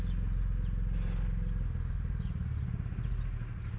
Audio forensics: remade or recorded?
recorded